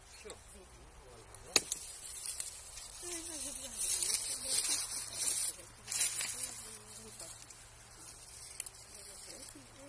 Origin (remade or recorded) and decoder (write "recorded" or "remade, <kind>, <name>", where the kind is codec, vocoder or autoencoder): recorded